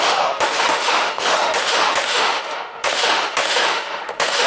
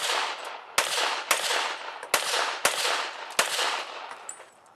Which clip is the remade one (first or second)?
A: first